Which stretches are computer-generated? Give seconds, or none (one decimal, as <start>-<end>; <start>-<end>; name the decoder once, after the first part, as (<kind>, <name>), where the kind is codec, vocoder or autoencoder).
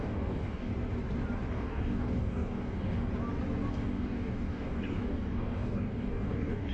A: 0.0-0.7 (codec, DAC); 1.5-3.1; 3.7-6.7